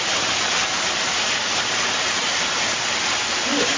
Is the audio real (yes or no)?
yes